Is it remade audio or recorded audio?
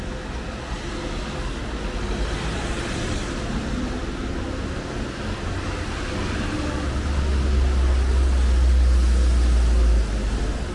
recorded